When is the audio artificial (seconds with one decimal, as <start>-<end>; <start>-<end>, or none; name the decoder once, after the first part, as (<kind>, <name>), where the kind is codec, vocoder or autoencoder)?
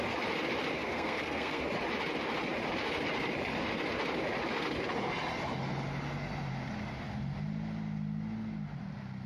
0.8-1.6 (codec, SNAC)